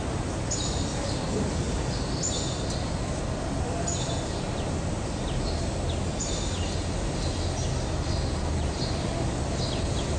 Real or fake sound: real